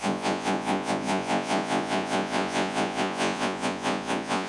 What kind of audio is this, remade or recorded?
remade